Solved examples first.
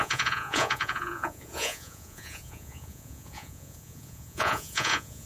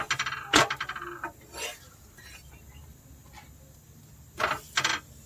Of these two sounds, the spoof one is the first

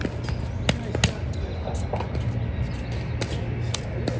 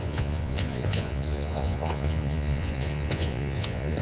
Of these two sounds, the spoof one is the second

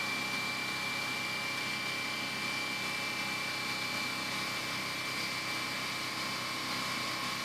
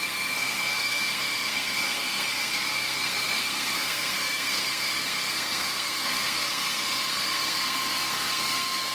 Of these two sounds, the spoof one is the second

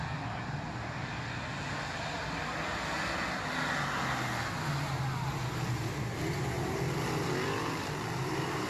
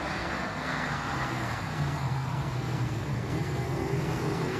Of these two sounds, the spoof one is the second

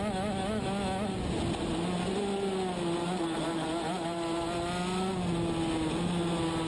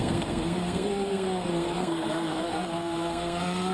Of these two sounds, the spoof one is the second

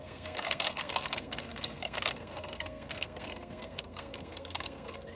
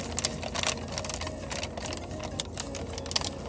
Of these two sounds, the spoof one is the first